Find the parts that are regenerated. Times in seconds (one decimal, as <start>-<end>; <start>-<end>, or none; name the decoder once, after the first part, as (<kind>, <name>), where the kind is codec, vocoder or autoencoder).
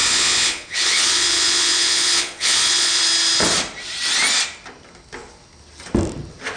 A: 0.0-3.0 (vocoder, Vocos)